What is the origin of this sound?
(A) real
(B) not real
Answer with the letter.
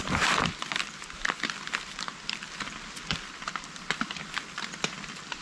B